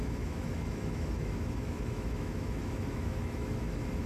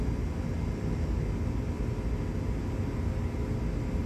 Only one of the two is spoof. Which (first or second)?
first